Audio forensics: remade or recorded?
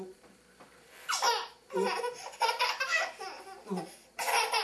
remade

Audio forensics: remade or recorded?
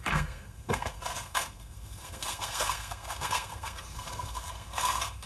remade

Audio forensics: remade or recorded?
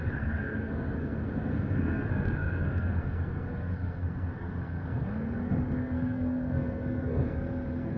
remade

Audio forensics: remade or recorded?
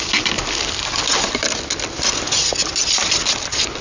recorded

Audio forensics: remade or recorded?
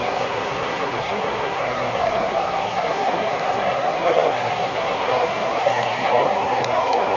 remade